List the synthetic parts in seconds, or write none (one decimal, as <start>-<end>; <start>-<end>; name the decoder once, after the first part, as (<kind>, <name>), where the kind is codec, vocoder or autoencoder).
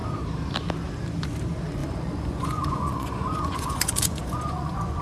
1.8-5.0 (vocoder, Vocos)